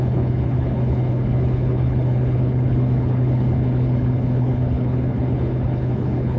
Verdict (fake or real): fake